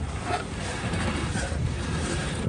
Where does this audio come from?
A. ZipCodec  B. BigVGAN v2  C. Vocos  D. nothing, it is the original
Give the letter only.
B